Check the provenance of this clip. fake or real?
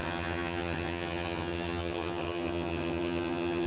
fake